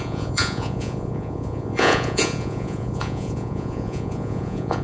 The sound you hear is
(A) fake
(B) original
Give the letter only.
A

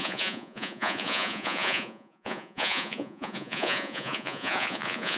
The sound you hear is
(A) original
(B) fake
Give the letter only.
B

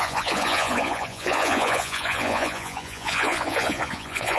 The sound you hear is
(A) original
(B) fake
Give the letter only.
B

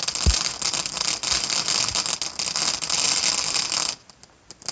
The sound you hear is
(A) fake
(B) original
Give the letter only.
B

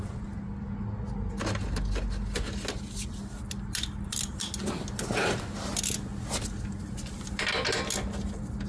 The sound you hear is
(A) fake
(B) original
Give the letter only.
B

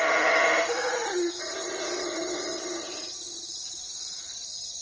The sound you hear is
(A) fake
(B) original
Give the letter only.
B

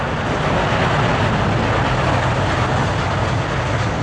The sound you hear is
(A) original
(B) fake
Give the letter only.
A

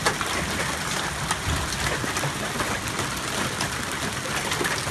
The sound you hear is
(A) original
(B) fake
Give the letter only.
A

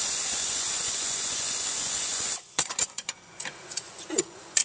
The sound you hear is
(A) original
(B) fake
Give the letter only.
B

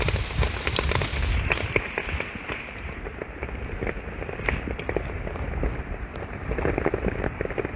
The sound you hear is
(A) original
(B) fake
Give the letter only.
A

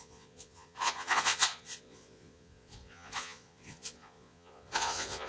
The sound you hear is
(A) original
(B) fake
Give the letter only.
B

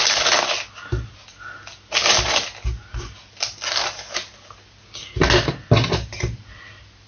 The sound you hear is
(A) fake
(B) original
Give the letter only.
B